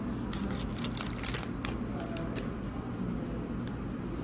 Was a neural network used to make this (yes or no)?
no